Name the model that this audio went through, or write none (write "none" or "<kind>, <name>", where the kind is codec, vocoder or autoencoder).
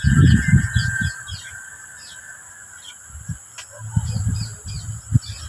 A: none